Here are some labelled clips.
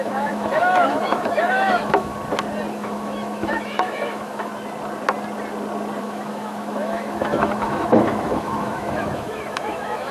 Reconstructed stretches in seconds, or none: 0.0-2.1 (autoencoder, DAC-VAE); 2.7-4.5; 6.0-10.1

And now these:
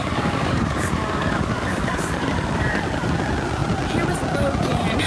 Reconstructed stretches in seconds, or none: 0.0-3.1 (codec, DAC)

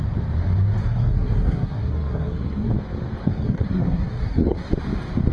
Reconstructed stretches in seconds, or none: 0.8-2.7 (codec, SNAC); 3.2-4.7

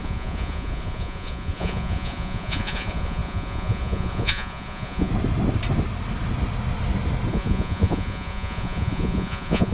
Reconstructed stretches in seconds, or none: 0.0-5.1 (vocoder, Vocos); 7.3-9.7

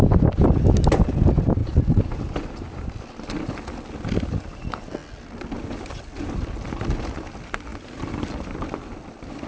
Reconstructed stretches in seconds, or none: 7.7-9.5 (vocoder, BigVGAN v2)

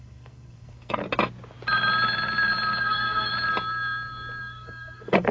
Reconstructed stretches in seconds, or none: 0.0-1.0 (codec, SNAC); 2.8-3.3; 4.4-5.3

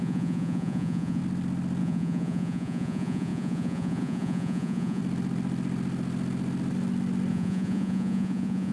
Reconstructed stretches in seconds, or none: 0.0-1.2 (vocoder, Vocos); 1.8-5.0; 7.3-8.7

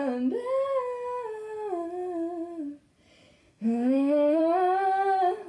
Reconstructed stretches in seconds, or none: 3.4-4.4 (autoencoder, DAC-VAE)